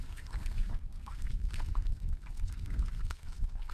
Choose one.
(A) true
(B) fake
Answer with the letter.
B